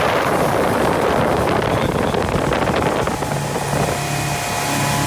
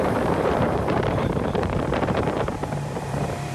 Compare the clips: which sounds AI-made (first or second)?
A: second